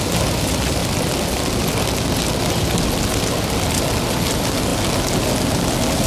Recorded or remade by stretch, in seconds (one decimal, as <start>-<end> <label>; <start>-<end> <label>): 0.0-6.1 recorded